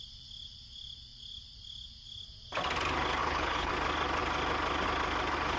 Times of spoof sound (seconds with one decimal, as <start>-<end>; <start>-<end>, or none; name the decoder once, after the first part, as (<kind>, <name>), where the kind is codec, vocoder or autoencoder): 3.2-3.7 (codec, HILCodec)